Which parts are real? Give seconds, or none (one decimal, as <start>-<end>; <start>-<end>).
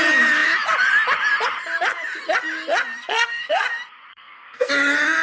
0.0-3.0; 3.6-4.1; 4.7-5.2